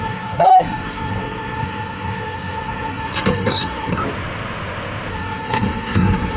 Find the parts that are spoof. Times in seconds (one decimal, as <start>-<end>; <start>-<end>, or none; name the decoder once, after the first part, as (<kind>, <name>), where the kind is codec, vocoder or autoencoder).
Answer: 0.0-4.0 (codec, SNAC); 5.1-6.4